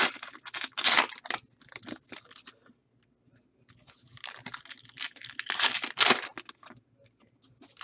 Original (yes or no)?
yes